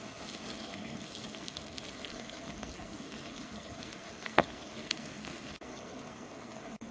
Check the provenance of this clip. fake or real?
fake